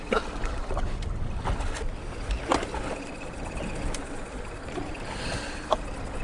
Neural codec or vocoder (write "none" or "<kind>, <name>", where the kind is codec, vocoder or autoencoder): none